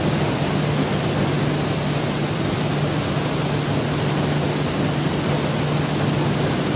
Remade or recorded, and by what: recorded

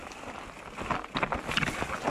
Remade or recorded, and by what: recorded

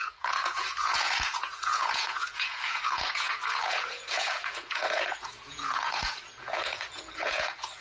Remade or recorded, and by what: remade, vocoder, Vocos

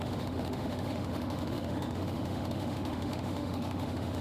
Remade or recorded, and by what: remade, autoencoder, DAC-VAE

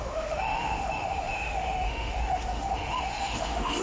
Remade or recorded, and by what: remade, autoencoder, DAC-VAE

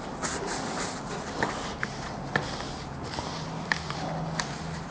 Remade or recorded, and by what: recorded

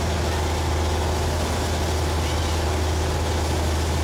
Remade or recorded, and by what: recorded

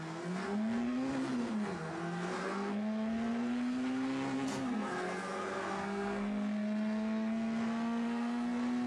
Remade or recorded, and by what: remade, codec, SNAC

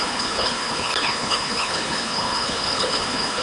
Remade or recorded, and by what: remade, codec, HILCodec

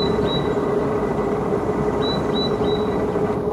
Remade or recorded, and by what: recorded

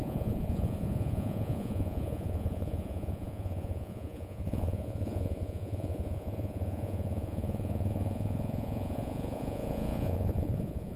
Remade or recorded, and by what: remade, vocoder, Vocos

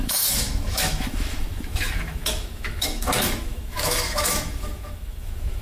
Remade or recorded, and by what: remade, autoencoder, DAC-VAE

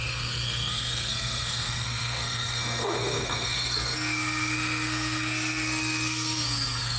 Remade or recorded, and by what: remade, codec, SNAC